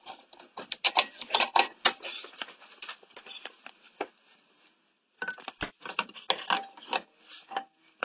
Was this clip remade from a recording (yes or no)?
no